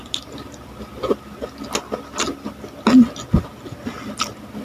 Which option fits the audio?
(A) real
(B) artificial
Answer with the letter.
A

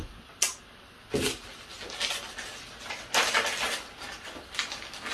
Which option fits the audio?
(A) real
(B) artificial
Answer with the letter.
A